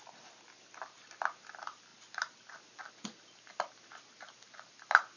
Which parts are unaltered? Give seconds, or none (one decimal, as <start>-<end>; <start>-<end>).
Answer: 0.0-5.2